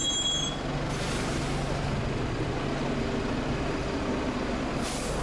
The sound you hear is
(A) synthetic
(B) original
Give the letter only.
B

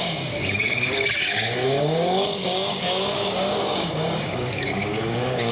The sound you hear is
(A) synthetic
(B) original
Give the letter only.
A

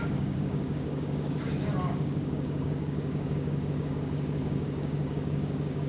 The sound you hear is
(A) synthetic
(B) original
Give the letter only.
A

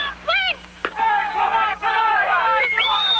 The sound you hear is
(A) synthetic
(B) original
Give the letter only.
A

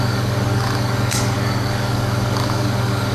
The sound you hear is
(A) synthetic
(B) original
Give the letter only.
A